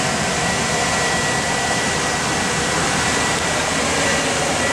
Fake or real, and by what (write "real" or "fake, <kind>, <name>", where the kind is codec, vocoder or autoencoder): fake, vocoder, BigVGAN v2